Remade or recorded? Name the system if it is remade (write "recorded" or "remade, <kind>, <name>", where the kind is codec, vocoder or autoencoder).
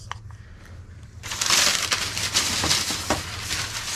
recorded